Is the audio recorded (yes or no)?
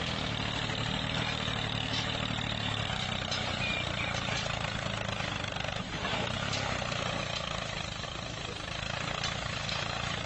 yes